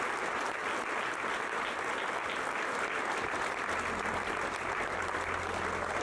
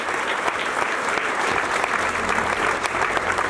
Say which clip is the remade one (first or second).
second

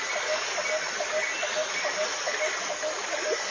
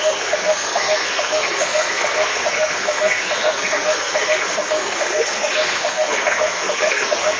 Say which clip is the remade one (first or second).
second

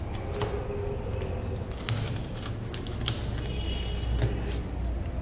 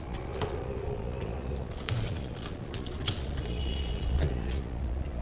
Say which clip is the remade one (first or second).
second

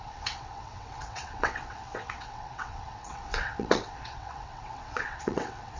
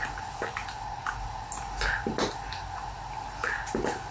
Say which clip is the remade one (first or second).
first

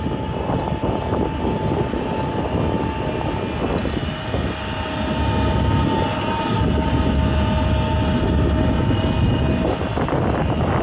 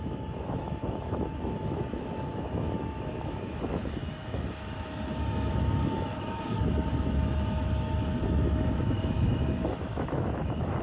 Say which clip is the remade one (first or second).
second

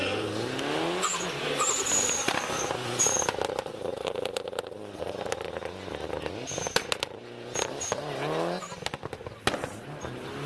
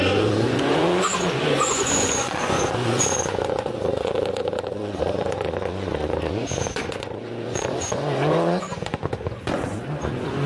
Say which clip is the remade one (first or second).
second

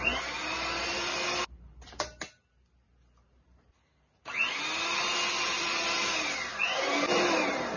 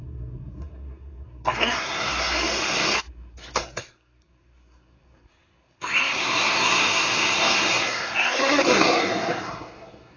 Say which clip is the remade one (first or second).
second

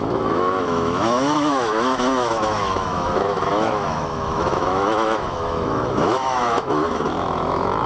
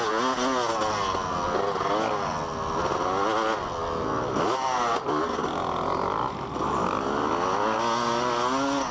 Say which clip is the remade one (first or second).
first